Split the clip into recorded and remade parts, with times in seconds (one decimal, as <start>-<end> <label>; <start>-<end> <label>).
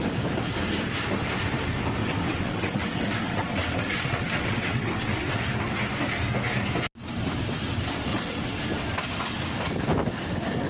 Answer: 0.0-2.0 recorded; 2.0-5.4 remade; 5.4-8.1 recorded; 8.1-8.6 remade; 8.6-10.7 recorded